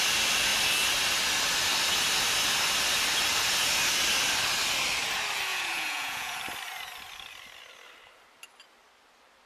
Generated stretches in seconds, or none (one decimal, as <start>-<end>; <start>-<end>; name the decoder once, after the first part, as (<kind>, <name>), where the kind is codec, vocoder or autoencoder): 5.5-6.4 (vocoder, Vocos)